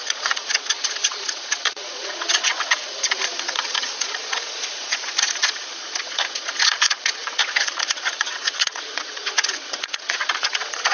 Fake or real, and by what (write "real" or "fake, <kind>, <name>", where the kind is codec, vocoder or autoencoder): fake, vocoder, Vocos